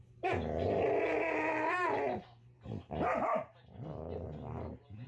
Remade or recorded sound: recorded